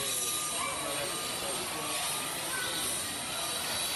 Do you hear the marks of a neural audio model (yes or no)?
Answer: no